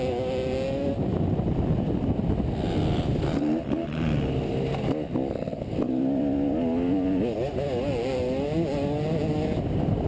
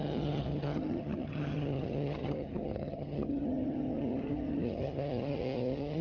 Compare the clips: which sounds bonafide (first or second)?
first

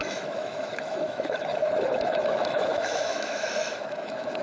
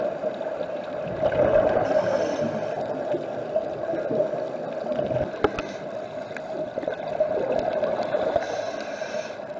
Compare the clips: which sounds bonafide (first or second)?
second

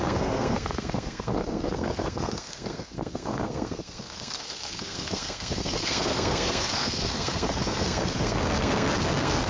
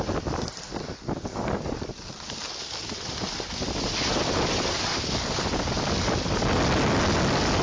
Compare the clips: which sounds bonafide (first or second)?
second